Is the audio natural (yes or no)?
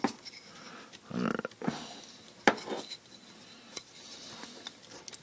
yes